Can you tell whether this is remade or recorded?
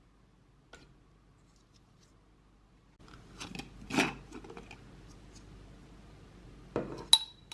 recorded